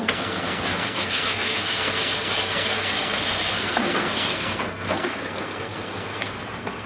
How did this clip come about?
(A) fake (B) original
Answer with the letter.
A